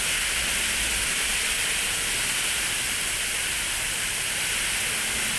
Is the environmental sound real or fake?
real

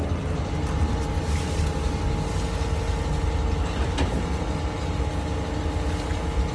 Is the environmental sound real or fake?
real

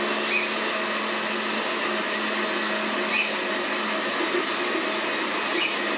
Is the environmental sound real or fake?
real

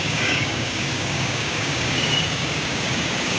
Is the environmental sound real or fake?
fake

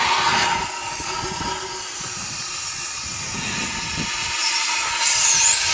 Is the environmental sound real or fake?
real